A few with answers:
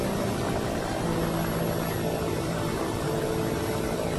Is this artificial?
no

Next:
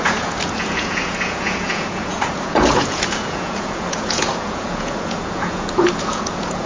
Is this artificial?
yes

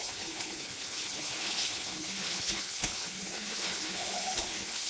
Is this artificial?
yes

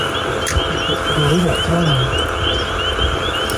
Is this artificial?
no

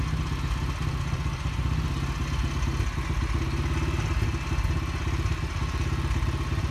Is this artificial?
no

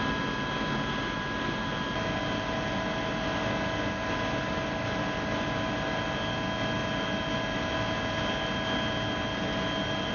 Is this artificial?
no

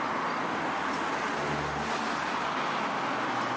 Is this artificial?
no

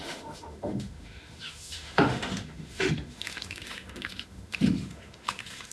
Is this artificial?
yes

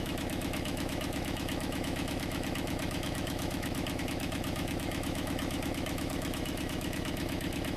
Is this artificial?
yes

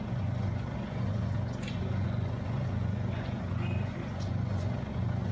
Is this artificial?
yes